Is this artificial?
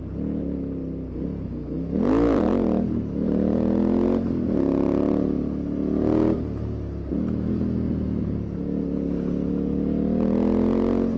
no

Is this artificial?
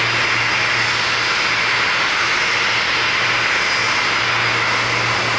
no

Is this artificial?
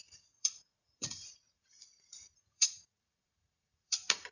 yes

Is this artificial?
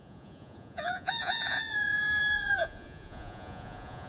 yes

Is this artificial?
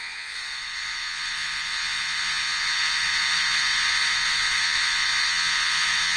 yes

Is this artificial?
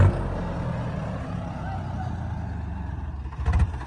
no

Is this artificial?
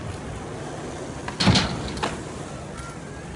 no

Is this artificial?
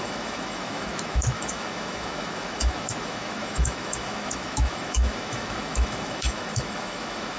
yes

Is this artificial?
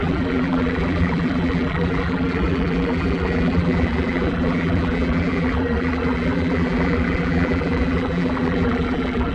yes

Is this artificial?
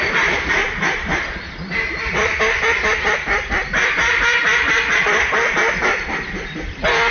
no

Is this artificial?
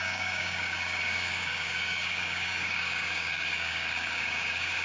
yes